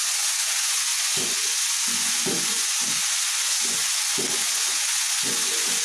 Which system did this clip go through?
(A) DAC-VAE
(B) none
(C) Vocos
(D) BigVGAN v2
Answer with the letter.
C